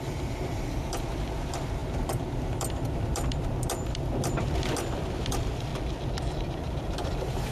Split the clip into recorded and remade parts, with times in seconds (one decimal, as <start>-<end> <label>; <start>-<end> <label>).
0.0-5.7 remade; 5.7-6.3 recorded; 6.3-7.5 remade